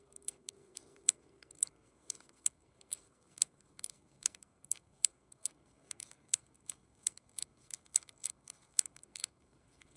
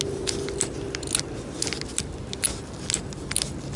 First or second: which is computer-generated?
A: first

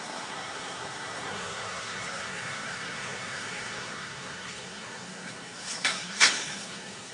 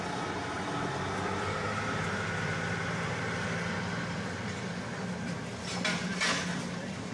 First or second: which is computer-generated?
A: first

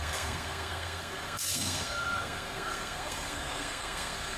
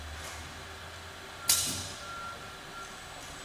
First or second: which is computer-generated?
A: first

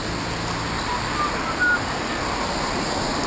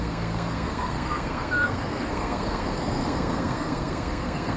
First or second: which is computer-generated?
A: second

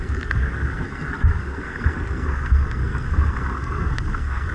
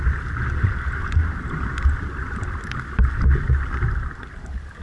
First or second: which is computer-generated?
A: first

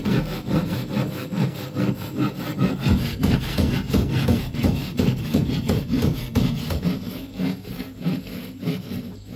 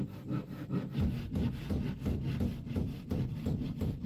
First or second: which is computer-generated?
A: first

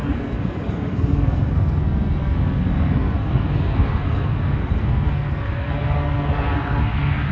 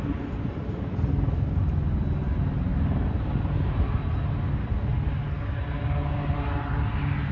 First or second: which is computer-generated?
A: first